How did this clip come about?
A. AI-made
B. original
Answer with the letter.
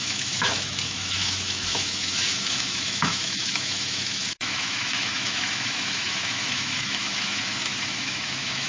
A